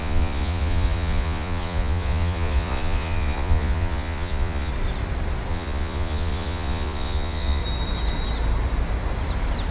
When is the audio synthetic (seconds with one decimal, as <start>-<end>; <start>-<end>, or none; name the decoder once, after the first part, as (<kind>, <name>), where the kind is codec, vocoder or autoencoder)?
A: 0.0-4.7 (vocoder, Vocos); 5.5-7.6